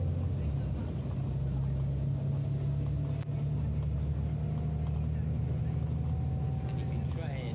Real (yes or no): yes